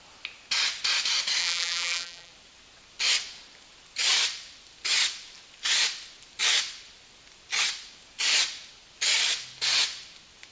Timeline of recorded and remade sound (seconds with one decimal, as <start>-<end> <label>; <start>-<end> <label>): 0.0-1.4 recorded; 1.4-2.3 remade; 2.3-10.5 recorded